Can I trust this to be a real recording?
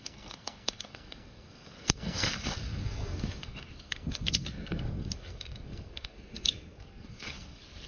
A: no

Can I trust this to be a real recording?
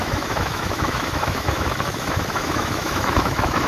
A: no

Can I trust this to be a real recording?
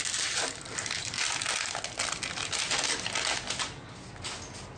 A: yes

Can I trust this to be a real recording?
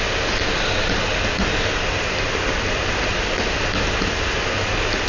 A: yes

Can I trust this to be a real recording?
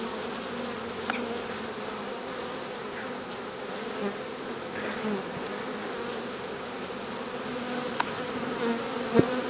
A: yes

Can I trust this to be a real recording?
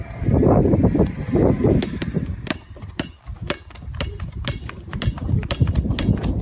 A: yes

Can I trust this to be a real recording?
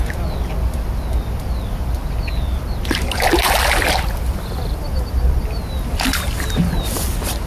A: yes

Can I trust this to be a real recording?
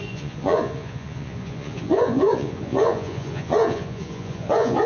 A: no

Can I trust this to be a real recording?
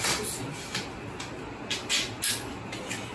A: yes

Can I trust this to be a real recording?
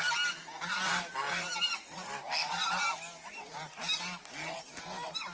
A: yes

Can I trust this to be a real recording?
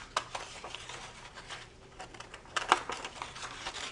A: no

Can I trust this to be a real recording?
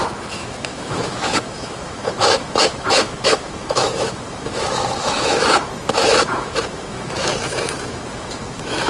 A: no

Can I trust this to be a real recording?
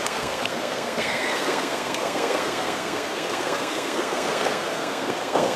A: no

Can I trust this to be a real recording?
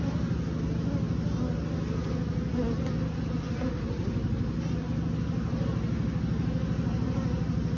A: yes